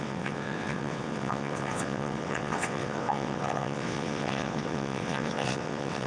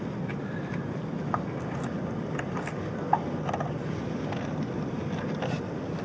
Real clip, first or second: second